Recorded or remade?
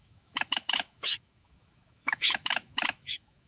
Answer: remade